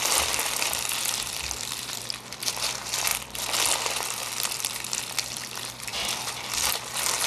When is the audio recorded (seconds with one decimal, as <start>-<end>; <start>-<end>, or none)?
none